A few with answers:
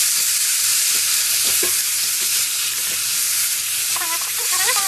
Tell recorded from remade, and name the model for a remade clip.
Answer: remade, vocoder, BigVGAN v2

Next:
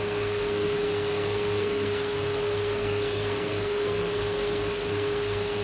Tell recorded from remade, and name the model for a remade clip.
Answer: remade, codec, SNAC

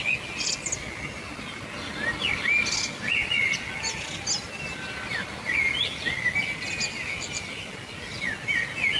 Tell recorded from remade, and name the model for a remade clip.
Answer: recorded